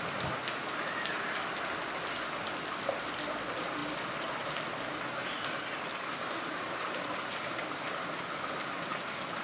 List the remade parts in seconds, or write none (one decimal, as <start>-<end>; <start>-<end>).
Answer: none